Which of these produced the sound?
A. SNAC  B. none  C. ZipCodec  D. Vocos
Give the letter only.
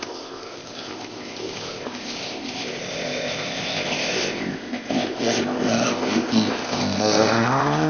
C